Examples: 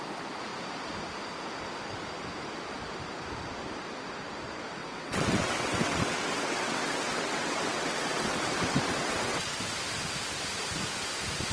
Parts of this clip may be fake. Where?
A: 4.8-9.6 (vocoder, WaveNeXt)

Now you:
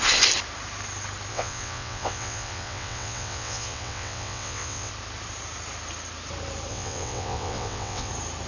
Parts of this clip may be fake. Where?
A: 1.3-4.9 (vocoder, WaveNeXt); 6.7-8.1